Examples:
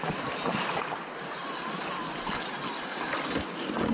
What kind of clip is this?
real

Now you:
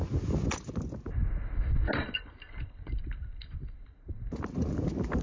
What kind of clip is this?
real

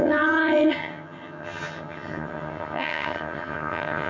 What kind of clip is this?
fake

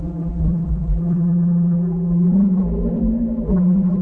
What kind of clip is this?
fake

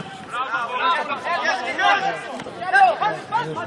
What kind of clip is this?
real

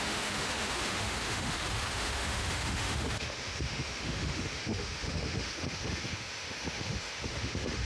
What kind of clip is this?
fake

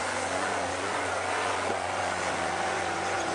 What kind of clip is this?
fake